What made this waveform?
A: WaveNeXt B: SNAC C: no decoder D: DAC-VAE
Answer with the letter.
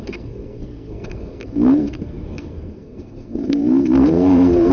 B